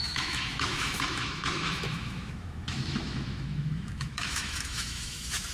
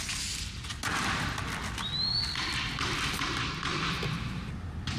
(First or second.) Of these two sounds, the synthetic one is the first